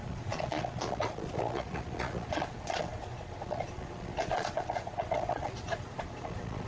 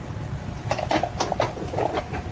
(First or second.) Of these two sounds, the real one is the second